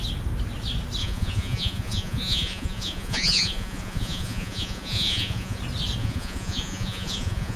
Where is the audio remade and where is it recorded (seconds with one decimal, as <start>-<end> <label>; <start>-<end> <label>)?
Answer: 0.0-1.0 recorded; 1.0-5.6 remade; 5.6-6.0 recorded; 6.0-7.6 remade